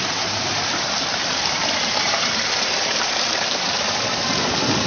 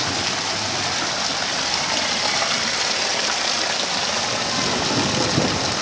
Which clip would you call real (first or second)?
second